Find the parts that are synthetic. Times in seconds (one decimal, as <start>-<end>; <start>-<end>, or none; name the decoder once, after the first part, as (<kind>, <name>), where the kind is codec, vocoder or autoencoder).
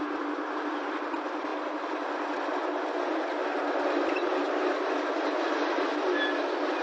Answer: none